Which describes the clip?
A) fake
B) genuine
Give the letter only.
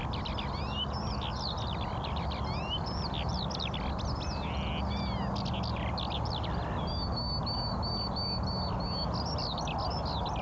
B